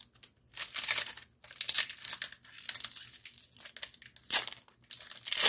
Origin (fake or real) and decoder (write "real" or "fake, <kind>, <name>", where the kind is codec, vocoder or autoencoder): real